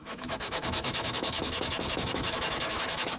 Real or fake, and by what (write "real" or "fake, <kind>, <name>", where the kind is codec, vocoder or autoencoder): fake, autoencoder, DAC-VAE